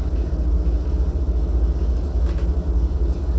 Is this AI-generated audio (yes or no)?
no